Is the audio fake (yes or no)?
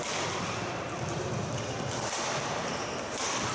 no